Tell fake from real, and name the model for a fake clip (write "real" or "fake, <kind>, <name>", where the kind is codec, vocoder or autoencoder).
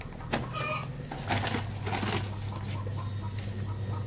real